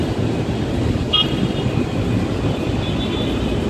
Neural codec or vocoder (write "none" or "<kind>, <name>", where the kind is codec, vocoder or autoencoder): none